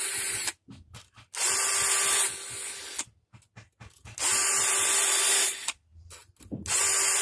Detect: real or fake real